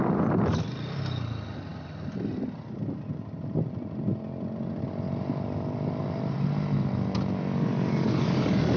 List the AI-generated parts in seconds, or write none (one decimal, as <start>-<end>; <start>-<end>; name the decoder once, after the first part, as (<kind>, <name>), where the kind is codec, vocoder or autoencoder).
none